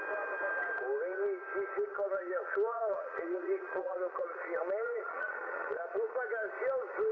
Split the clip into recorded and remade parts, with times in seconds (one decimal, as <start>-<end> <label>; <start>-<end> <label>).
0.0-1.9 recorded; 1.9-6.2 remade; 6.2-7.1 recorded